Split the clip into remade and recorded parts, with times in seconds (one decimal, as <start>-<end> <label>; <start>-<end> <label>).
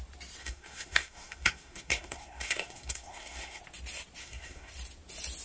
0.0-0.4 recorded; 0.4-3.6 remade; 3.6-4.2 recorded; 4.2-4.7 remade; 4.7-5.4 recorded